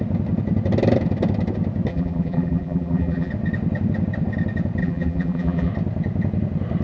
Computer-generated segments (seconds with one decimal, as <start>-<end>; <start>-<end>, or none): 1.9-3.3; 4.8-5.7